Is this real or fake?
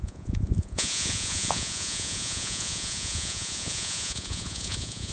fake